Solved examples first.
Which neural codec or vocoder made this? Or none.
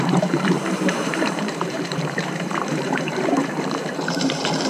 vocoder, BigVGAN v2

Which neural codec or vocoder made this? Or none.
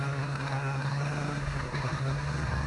codec, SNAC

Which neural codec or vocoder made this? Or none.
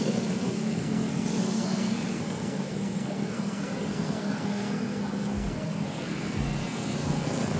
codec, SNAC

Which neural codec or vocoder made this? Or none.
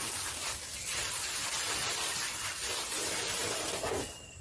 none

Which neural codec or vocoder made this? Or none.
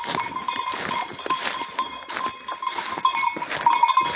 none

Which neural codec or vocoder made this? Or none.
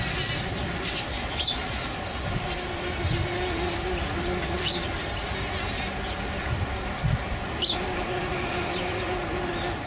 none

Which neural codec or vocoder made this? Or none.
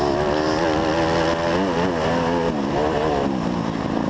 none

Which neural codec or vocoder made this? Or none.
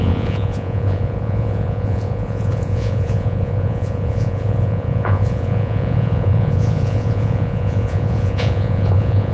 vocoder, Vocos